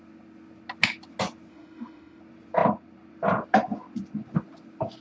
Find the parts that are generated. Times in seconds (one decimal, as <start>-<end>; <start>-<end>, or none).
1.5-2.2